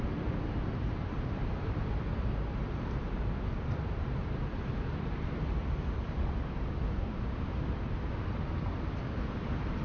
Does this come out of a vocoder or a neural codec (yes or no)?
yes